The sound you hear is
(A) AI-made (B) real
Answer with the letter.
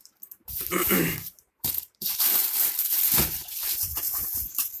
A